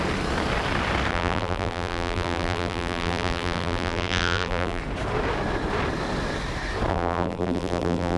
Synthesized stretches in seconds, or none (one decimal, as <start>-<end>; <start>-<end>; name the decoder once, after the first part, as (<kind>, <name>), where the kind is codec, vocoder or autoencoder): 1.1-4.8 (vocoder, BigVGAN v2); 6.9-8.2